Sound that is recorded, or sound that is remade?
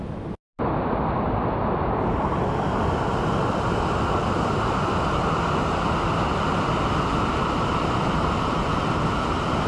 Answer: recorded